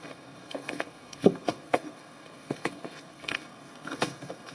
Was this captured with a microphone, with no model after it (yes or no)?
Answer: no